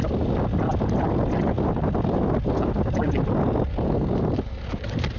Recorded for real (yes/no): yes